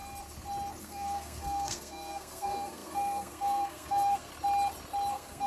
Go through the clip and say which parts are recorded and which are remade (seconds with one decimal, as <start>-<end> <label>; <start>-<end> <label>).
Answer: 0.0-0.8 recorded; 0.8-4.3 remade; 4.3-5.1 recorded; 5.1-5.5 remade